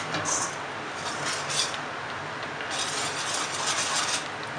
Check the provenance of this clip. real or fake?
real